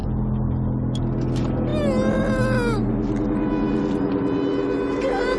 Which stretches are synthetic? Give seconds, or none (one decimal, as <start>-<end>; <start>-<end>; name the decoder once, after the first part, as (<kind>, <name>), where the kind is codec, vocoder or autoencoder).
none